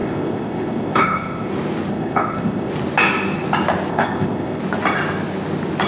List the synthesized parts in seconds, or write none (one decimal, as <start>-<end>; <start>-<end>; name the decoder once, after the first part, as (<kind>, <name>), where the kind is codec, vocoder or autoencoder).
0.0-1.5 (codec, ZipCodec); 1.9-2.7; 3.9-4.6